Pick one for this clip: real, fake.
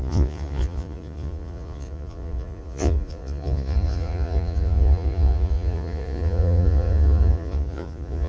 fake